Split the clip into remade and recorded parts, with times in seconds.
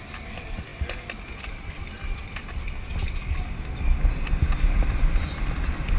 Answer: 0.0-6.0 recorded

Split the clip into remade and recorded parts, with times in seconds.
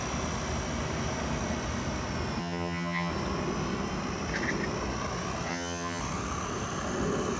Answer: 0.0-2.4 recorded; 2.4-3.1 remade; 3.1-5.5 recorded; 5.5-6.0 remade; 6.0-7.4 recorded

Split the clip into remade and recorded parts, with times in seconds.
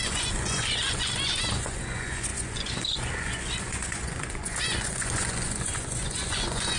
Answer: 0.0-6.8 remade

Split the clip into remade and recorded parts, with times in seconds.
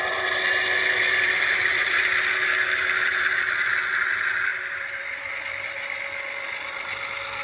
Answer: 0.0-7.4 recorded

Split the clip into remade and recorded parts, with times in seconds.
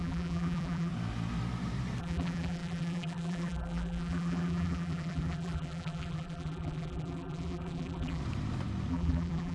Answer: 0.0-0.9 remade; 0.9-2.0 recorded; 2.0-8.2 remade; 8.2-8.9 recorded; 8.9-9.5 remade